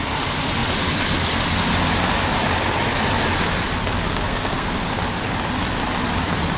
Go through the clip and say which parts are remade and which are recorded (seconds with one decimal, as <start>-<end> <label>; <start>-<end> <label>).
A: 0.0-4.1 recorded; 4.1-4.7 remade; 4.7-6.6 recorded